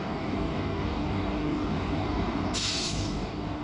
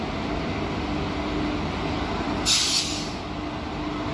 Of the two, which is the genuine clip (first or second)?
second